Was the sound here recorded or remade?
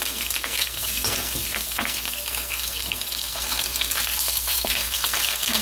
remade